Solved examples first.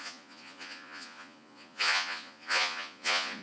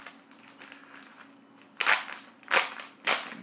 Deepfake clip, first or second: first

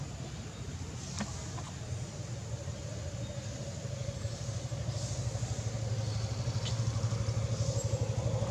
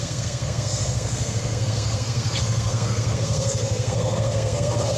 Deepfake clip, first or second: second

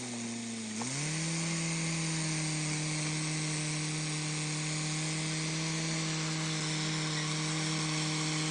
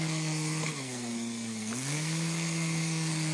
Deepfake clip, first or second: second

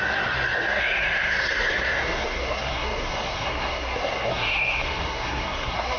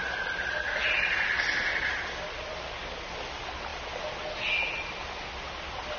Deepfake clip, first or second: first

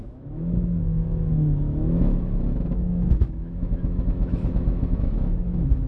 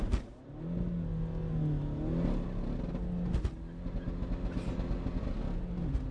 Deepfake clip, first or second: first